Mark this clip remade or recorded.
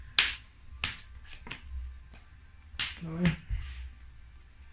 recorded